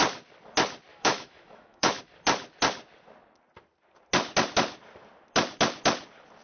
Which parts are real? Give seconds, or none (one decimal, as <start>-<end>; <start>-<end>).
0.0-0.9; 2.0-6.4